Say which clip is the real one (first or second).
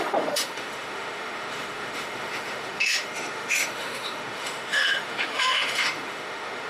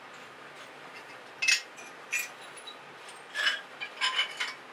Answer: second